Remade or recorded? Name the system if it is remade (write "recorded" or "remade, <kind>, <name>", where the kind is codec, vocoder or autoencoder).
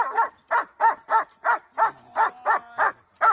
recorded